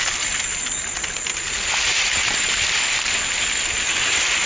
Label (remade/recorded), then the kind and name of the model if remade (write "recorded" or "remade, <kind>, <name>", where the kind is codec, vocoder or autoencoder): recorded